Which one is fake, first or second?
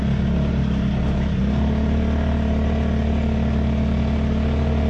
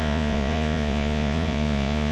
second